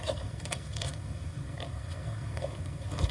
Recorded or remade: remade